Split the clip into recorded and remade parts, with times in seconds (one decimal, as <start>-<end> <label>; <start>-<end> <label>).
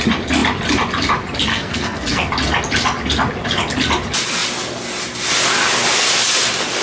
0.0-1.5 recorded; 1.5-2.3 remade; 2.3-6.8 recorded